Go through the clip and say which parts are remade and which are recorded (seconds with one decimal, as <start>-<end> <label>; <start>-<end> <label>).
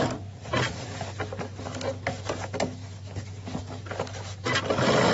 0.0-5.1 recorded